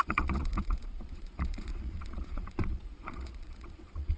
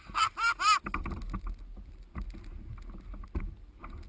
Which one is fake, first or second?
first